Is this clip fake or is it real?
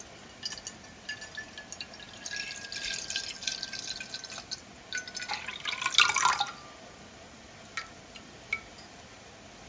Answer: real